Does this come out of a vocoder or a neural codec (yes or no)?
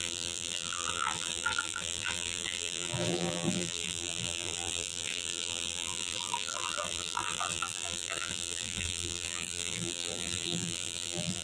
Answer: yes